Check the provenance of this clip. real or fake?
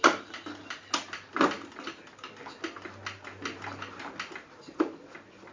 real